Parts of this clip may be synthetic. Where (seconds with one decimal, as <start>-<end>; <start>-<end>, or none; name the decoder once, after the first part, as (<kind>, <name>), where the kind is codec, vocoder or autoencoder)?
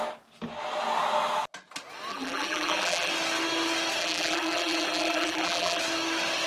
2.1-3.1 (vocoder, BigVGAN v2); 4.0-5.8